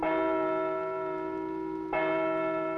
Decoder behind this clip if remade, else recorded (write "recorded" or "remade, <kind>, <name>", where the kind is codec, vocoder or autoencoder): recorded